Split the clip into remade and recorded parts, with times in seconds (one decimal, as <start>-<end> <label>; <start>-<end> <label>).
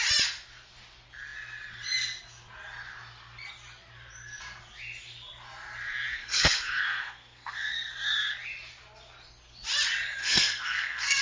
0.0-6.2 recorded; 6.2-7.9 remade; 7.9-10.2 recorded; 10.2-11.2 remade